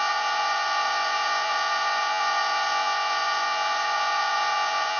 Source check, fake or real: fake